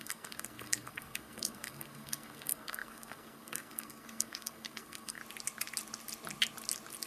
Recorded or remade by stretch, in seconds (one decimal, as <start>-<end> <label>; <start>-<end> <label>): 0.0-5.2 remade; 5.2-7.1 recorded